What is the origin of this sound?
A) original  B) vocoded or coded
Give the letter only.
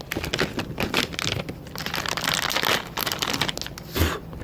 A